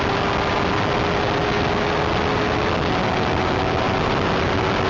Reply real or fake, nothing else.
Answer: real